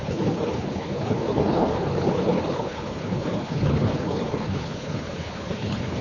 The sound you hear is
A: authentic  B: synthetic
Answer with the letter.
B